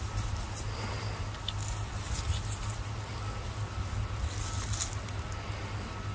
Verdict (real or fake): real